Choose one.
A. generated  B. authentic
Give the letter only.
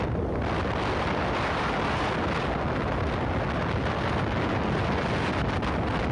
B